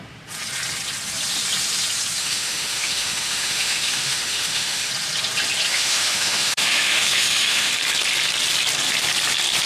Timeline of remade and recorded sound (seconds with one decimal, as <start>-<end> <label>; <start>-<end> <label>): 0.0-2.2 recorded; 2.2-4.9 remade; 4.9-5.7 recorded; 5.7-7.7 remade; 7.7-9.7 recorded